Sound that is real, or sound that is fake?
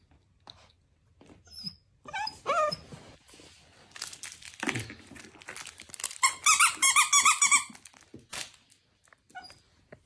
real